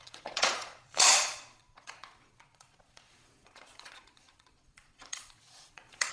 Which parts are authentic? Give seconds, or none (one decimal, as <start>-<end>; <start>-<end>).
none